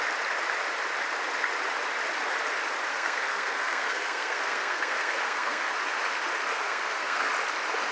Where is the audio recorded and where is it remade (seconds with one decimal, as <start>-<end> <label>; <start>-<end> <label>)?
0.0-2.9 recorded; 2.9-5.7 remade; 5.7-6.5 recorded; 6.5-7.3 remade; 7.3-7.9 recorded